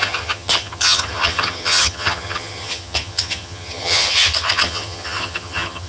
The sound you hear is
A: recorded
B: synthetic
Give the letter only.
B